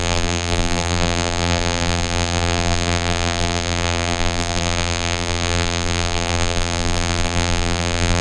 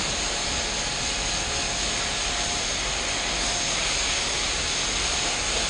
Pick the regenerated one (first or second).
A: first